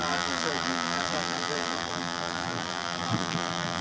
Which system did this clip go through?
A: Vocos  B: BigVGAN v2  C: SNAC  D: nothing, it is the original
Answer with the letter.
B